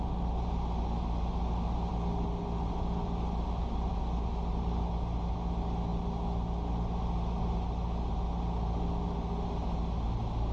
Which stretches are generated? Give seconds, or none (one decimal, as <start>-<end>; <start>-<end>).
none